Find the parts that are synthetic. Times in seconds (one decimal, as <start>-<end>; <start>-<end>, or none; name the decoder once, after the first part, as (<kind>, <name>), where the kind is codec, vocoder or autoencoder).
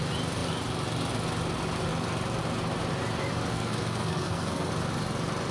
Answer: 3.5-4.7 (codec, SNAC)